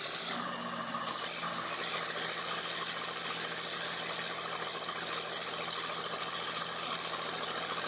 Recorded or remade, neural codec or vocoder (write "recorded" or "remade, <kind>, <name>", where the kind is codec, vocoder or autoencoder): recorded